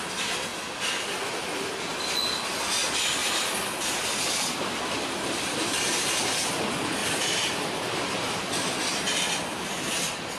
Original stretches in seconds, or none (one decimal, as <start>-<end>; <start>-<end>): 0.0-3.2; 6.5-7.0; 8.5-10.4